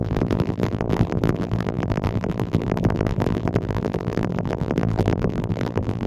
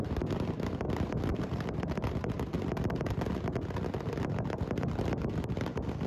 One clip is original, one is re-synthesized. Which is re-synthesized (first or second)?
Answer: first